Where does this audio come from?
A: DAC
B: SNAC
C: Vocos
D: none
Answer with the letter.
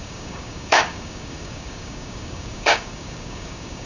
A